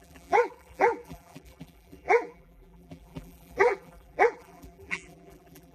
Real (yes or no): no